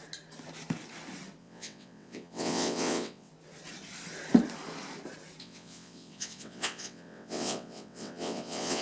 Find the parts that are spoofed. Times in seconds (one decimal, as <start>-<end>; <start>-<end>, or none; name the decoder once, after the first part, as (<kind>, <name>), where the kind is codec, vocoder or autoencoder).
1.4-3.3 (vocoder, WaveNeXt); 5.4-8.8